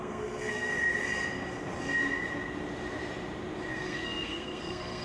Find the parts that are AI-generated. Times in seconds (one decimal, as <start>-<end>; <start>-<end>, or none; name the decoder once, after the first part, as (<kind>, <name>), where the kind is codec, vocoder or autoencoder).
0.0-0.7 (codec, SNAC); 3.7-5.0